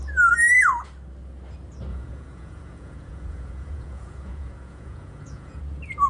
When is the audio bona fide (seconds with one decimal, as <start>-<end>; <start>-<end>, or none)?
0.0-1.9; 5.6-6.1